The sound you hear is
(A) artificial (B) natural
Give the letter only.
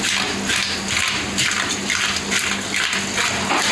B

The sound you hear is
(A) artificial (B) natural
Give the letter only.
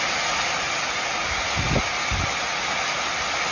B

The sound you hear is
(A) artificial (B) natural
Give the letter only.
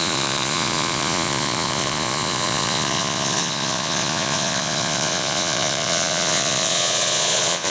A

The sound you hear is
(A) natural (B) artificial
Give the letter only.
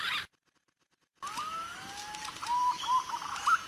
A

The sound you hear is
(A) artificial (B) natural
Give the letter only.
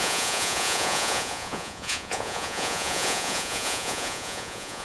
A